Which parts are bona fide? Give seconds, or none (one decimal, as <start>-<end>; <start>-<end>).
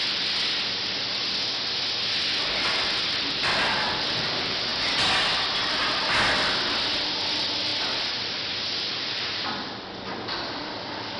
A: 0.0-11.2